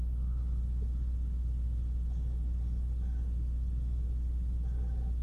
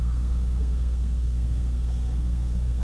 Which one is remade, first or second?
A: second